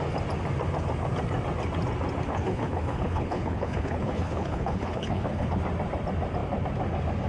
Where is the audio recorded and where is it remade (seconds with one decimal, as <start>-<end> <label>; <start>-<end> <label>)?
0.0-2.3 recorded; 2.3-5.5 remade; 5.5-7.3 recorded